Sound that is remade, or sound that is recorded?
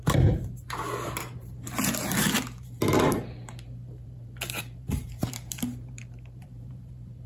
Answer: remade